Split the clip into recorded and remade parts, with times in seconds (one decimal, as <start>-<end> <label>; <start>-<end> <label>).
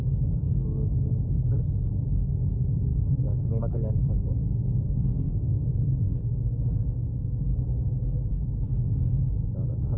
0.0-7.5 remade; 7.5-8.3 recorded; 8.3-10.0 remade